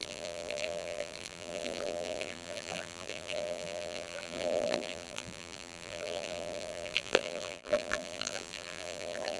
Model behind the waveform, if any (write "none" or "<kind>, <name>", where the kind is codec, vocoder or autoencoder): vocoder, BigVGAN v2